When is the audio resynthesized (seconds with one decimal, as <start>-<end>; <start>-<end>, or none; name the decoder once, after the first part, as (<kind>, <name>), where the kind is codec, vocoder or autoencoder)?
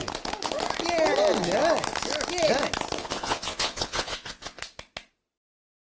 3.0-4.6 (vocoder, Vocos)